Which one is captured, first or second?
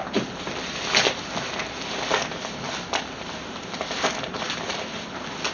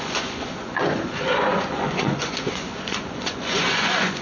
first